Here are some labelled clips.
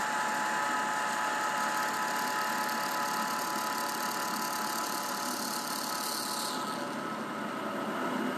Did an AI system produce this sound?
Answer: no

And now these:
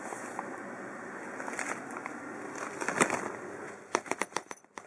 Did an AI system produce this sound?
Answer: no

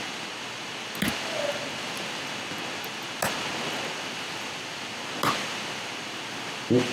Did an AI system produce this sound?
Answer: no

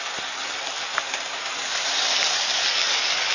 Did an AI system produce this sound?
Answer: no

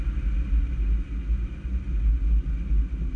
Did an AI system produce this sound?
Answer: no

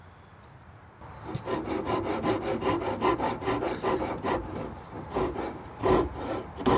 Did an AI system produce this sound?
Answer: no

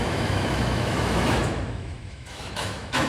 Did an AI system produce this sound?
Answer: yes